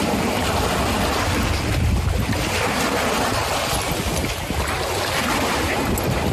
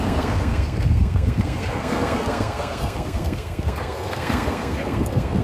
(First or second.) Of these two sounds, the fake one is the second